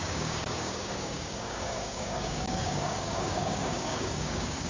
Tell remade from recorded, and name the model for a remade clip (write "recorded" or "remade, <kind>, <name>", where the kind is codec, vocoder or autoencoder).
remade, codec, DAC